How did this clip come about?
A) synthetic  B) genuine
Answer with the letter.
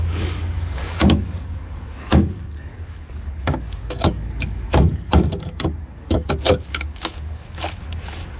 A